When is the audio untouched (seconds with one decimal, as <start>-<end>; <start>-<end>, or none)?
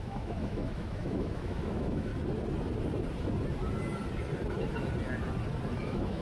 2.1-5.8